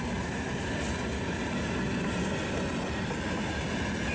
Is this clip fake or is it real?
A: real